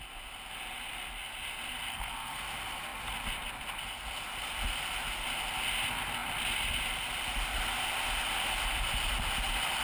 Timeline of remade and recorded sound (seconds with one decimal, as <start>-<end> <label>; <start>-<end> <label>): 0.0-1.9 recorded; 1.9-2.4 remade; 2.4-9.8 recorded